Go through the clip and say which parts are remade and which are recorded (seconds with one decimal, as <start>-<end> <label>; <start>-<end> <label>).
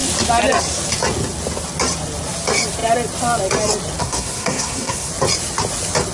0.0-4.0 recorded; 4.0-5.1 remade; 5.1-6.1 recorded